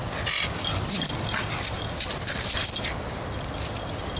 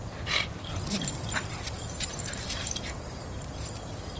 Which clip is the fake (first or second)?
second